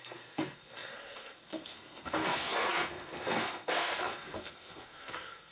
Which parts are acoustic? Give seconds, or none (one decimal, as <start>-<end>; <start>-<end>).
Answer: none